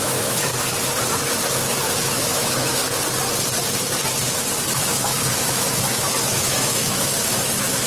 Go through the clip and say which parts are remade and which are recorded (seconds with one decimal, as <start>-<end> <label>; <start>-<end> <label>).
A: 0.0-0.5 remade; 0.5-1.9 recorded; 1.9-2.8 remade; 2.8-4.7 recorded; 4.7-7.9 remade

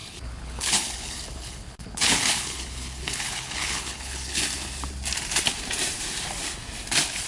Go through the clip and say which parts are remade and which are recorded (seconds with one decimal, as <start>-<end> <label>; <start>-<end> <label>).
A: 0.0-4.4 remade; 4.4-7.3 recorded